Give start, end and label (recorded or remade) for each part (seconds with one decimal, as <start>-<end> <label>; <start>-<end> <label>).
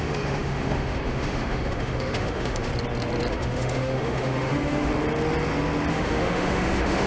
0.0-2.7 remade; 2.7-3.3 recorded; 3.3-4.9 remade; 4.9-5.9 recorded; 5.9-7.1 remade